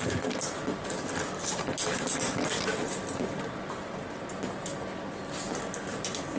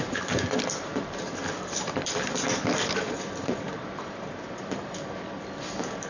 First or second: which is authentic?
first